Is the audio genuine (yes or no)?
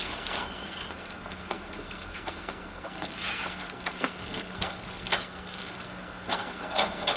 no